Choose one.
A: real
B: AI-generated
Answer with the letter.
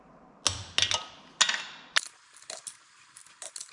A